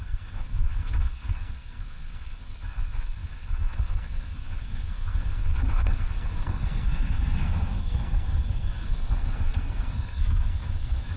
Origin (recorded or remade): remade